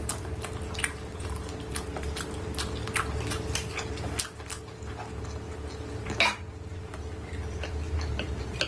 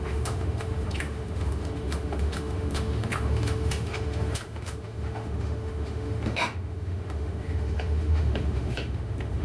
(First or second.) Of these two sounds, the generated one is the second